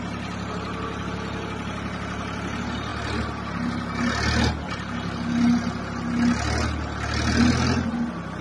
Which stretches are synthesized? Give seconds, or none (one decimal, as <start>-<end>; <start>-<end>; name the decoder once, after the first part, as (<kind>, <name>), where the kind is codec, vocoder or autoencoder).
none